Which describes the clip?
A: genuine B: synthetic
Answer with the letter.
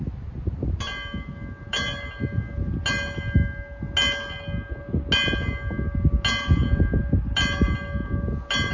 A